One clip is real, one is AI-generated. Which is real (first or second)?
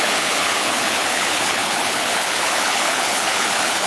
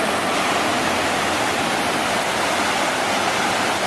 second